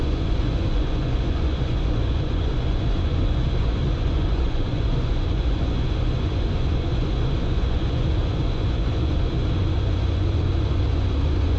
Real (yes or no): no